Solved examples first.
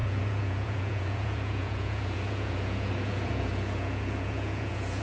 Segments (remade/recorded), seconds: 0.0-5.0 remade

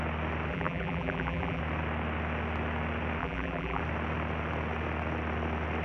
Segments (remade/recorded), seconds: 0.0-0.5 recorded; 0.5-1.6 remade; 1.6-3.2 recorded; 3.2-3.8 remade; 3.8-5.8 recorded

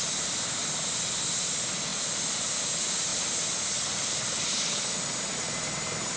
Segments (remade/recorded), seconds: 0.0-0.6 recorded; 0.6-1.3 remade; 1.3-1.9 recorded; 1.9-2.6 remade; 2.6-3.1 recorded; 3.1-4.8 remade; 4.8-6.2 recorded

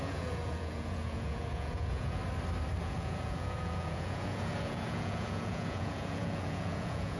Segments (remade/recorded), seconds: 0.0-2.2 remade; 2.2-2.8 recorded; 2.8-7.2 remade